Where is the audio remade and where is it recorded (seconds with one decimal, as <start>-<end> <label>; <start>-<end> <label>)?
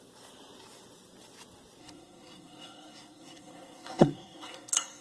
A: 0.0-1.8 recorded; 1.8-5.0 remade